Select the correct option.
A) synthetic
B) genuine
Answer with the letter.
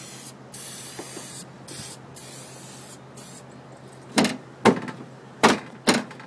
B